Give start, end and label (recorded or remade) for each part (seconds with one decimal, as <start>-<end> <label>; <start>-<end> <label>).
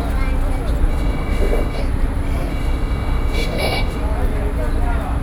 0.0-0.9 recorded; 0.9-1.8 remade; 1.8-2.5 recorded; 2.5-4.0 remade; 4.0-5.2 recorded